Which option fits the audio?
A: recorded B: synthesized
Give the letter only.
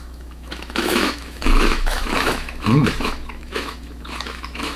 B